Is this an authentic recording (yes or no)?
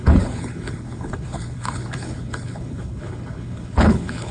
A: no